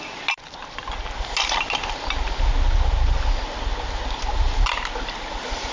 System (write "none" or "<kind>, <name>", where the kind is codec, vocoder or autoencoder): none